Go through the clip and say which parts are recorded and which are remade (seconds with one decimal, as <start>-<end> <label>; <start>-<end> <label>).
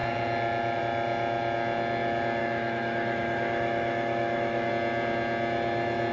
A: 0.0-2.4 recorded; 2.4-4.7 remade; 4.7-6.1 recorded